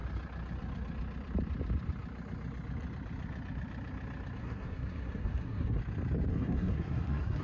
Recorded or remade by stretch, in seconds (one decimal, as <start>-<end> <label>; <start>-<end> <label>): 0.0-4.4 recorded; 4.4-5.8 remade; 5.8-6.3 recorded; 6.3-7.4 remade